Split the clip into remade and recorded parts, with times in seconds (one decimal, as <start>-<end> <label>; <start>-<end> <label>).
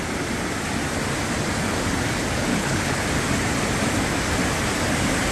0.0-2.5 recorded; 2.5-3.0 remade; 3.0-5.3 recorded